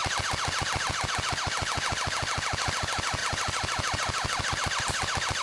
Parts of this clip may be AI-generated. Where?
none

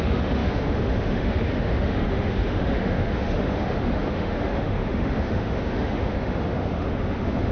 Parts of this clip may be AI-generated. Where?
0.0-7.5

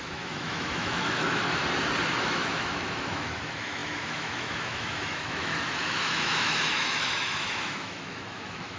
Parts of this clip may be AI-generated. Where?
0.0-1.6; 2.2-8.8

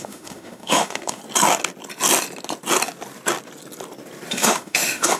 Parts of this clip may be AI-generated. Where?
0.0-1.2; 4.3-5.2

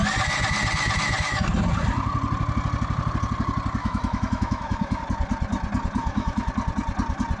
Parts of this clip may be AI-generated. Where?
3.8-5.0; 6.0-6.5

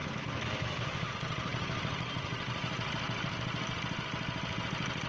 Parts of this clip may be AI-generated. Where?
0.0-1.1